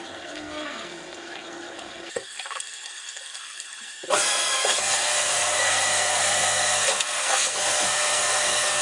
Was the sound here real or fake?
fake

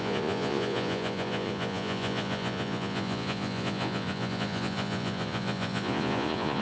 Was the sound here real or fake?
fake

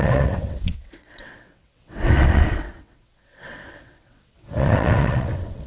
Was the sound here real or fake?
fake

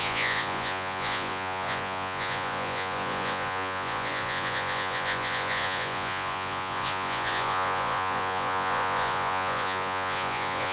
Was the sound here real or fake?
fake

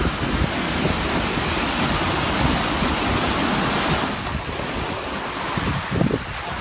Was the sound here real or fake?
real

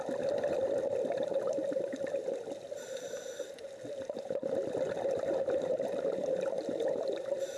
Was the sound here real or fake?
fake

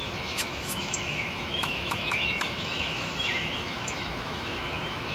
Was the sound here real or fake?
fake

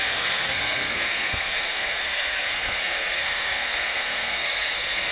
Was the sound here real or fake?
fake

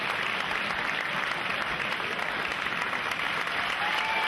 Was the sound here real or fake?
real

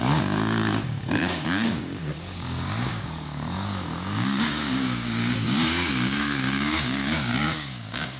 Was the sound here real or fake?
fake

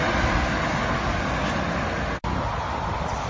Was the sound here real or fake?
real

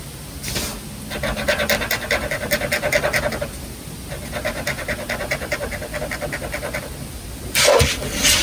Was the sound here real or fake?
real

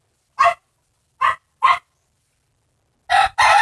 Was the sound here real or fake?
real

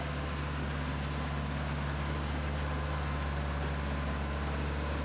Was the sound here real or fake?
real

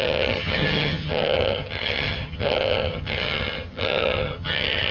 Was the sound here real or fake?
fake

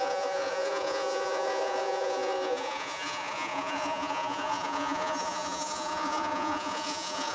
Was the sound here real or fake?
fake